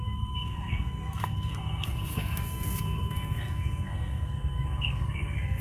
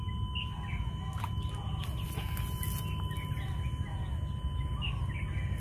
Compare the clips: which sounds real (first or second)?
second